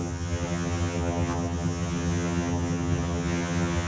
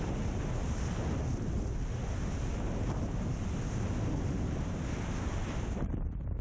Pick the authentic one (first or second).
second